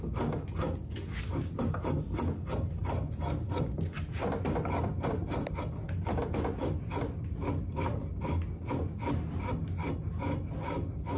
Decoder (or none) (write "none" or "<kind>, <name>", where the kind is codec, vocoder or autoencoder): none